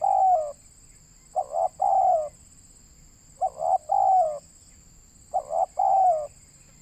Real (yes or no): yes